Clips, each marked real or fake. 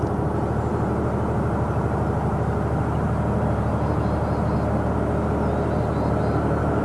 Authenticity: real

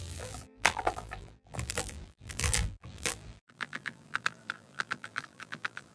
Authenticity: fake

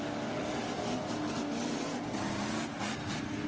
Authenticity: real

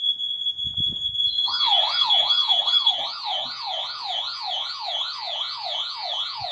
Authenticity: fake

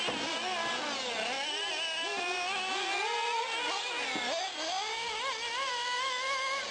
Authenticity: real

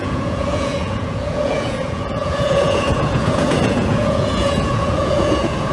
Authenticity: fake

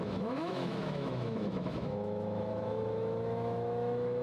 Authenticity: fake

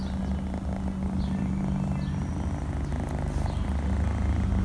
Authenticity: real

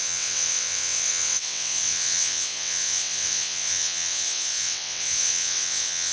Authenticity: fake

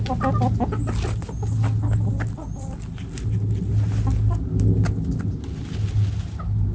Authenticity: real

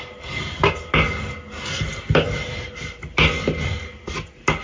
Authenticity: real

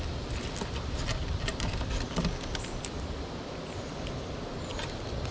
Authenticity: real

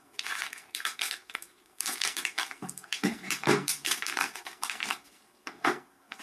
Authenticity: fake